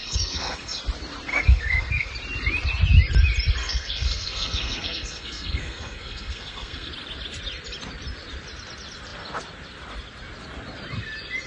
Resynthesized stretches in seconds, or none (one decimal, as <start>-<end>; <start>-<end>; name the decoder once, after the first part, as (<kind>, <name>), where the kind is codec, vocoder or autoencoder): 0.0-0.8 (codec, SNAC); 1.3-2.1; 3.6-6.9